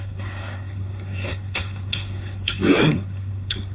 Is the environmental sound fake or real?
fake